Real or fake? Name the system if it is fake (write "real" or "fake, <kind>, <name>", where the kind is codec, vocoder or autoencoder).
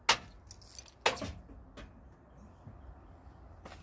real